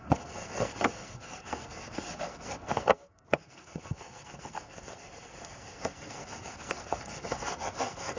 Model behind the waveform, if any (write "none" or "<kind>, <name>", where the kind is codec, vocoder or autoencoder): codec, SNAC